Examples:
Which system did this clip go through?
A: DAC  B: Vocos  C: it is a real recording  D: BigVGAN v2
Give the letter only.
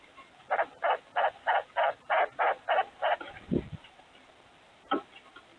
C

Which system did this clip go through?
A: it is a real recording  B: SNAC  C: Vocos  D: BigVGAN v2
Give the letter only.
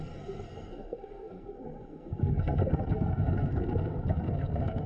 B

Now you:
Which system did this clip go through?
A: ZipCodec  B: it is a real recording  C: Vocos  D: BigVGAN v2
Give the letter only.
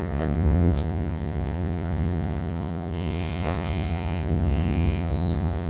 C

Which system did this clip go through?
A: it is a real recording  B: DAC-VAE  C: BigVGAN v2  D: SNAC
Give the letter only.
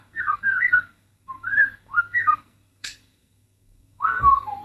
D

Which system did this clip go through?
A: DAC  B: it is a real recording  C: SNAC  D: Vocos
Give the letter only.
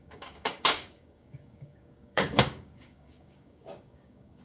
A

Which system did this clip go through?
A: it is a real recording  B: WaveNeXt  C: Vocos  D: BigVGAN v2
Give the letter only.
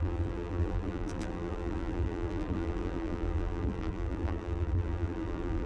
D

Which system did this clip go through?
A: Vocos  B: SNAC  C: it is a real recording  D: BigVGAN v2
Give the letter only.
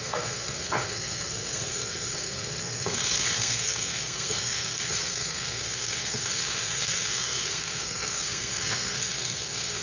B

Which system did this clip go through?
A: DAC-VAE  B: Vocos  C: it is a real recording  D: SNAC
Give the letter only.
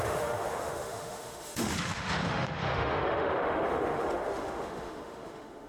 A